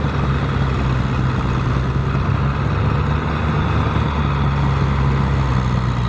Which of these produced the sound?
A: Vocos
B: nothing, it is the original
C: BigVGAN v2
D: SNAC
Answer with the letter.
B